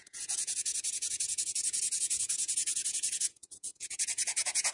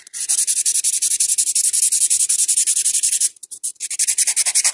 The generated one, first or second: first